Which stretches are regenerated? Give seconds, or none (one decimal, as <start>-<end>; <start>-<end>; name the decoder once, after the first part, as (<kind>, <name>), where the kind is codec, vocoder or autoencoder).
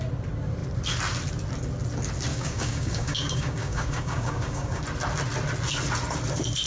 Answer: 2.3-4.8 (codec, DAC)